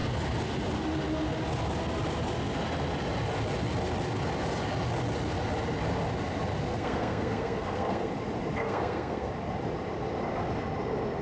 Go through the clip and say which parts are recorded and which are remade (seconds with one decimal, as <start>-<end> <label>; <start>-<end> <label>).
0.0-6.7 recorded; 6.7-8.1 remade; 8.1-8.6 recorded; 8.6-9.3 remade; 9.3-11.2 recorded